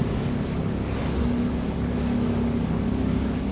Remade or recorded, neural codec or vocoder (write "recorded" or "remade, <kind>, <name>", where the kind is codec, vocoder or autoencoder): remade, codec, DAC